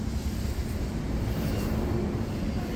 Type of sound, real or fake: real